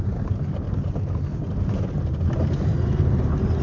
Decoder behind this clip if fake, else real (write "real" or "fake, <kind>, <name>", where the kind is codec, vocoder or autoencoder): real